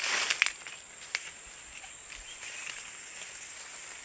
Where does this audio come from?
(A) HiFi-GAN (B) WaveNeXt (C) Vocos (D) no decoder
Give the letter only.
D